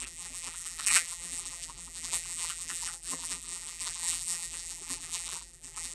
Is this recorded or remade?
remade